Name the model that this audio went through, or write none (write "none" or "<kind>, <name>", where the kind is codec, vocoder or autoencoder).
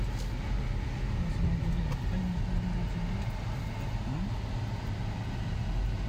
none